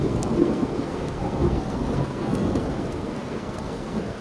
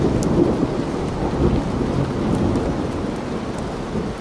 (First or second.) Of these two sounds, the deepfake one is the first